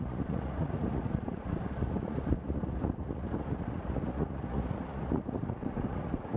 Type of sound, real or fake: fake